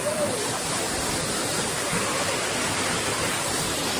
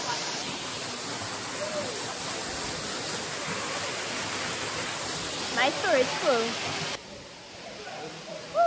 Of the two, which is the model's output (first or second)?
first